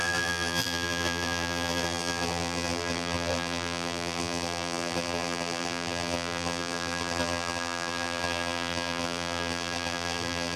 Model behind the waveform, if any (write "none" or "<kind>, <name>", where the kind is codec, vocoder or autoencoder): vocoder, BigVGAN v2